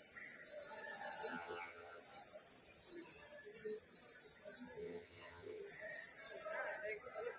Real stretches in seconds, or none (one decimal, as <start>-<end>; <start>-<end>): 0.0-1.3; 2.0-4.8; 5.6-7.4